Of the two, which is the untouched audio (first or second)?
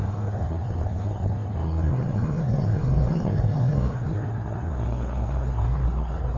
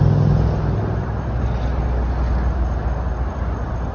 second